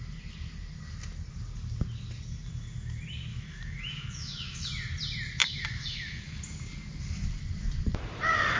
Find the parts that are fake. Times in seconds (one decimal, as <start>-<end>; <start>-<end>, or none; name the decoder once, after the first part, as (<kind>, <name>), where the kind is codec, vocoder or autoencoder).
3.3-4.7 (autoencoder, DAC-VAE); 5.4-6.2